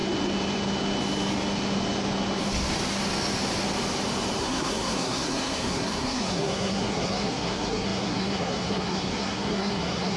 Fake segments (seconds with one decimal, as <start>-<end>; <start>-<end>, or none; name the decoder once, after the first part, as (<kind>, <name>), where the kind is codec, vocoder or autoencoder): 4.4-10.2 (codec, SNAC)